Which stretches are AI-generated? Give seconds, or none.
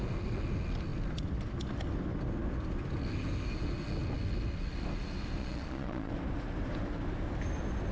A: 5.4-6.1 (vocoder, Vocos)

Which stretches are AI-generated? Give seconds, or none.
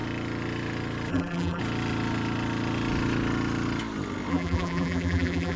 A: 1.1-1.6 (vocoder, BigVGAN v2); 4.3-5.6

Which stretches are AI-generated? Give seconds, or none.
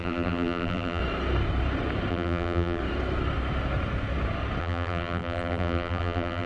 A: 0.0-1.0 (vocoder, BigVGAN v2); 2.1-2.8; 4.6-6.5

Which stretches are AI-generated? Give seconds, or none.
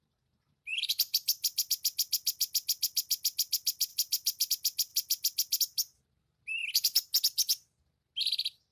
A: 0.7-1.7 (vocoder, BigVGAN v2); 3.9-4.5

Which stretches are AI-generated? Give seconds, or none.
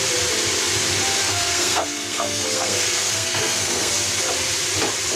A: 1.2-3.9 (codec, SNAC)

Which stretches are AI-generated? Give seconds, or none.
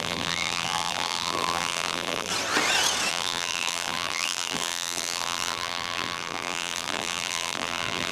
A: 0.0-2.3 (vocoder, BigVGAN v2); 3.1-8.1